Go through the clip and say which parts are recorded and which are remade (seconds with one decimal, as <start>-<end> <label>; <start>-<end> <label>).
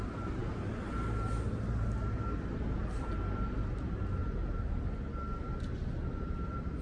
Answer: 0.0-6.8 recorded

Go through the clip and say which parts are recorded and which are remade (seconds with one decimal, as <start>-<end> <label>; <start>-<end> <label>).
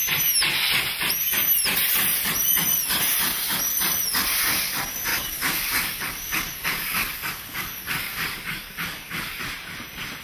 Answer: 0.0-5.1 recorded; 5.1-9.4 remade; 9.4-10.2 recorded